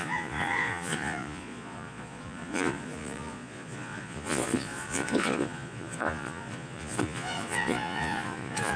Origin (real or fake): fake